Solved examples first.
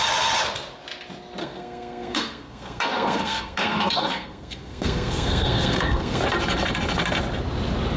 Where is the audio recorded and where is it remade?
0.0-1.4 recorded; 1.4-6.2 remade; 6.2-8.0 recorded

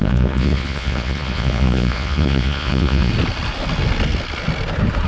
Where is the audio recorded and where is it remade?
0.0-3.1 remade; 3.1-5.1 recorded